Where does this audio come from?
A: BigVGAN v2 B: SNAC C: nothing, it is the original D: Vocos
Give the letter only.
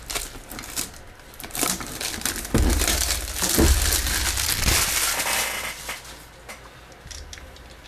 C